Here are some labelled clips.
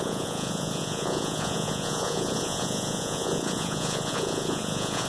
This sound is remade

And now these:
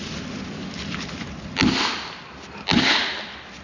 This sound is recorded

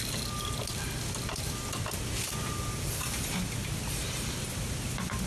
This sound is recorded